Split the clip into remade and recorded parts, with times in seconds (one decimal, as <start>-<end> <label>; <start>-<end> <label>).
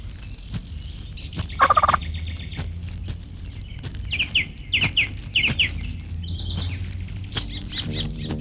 0.0-8.4 recorded